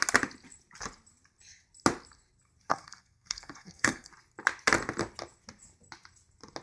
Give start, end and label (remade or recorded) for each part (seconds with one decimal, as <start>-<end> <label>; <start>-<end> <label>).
0.0-2.7 recorded; 2.7-4.1 remade; 4.1-6.6 recorded